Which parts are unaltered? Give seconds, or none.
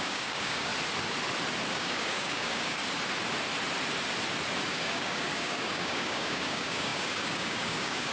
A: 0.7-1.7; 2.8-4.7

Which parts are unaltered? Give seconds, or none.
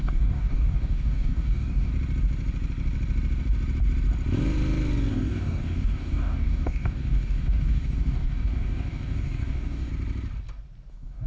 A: 1.9-5.1; 9.9-10.9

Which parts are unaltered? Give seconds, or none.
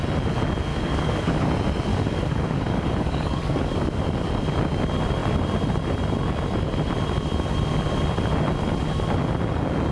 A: 0.0-0.7; 1.5-1.9; 4.3-9.9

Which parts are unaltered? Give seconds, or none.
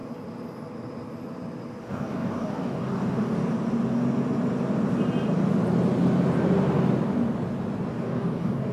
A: 0.0-1.8; 3.4-7.9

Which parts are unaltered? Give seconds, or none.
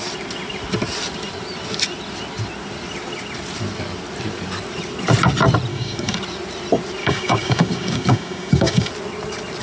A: 0.0-5.7; 6.2-7.0; 8.9-9.6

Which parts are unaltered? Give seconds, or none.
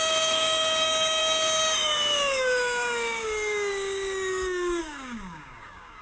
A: none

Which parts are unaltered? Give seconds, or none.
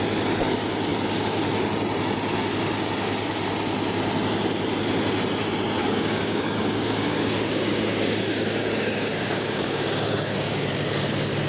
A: 0.0-5.8; 10.7-11.5